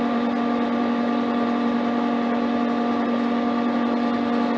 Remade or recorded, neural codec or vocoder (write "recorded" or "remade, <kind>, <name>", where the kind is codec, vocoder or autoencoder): recorded